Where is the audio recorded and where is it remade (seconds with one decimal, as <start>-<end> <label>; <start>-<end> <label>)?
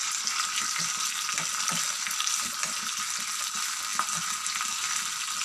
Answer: 0.0-0.8 remade; 0.8-1.3 recorded; 1.3-3.5 remade; 3.5-5.4 recorded